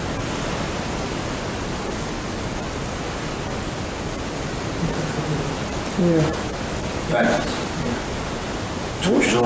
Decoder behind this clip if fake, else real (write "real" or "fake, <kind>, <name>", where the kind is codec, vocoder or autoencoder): real